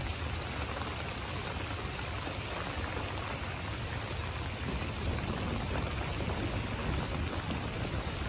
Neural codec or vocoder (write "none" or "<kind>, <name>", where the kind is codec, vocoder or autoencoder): none